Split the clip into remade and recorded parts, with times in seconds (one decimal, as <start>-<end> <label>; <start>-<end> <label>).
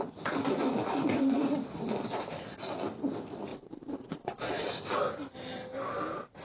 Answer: 0.0-3.5 recorded; 3.5-4.5 remade; 4.5-6.4 recorded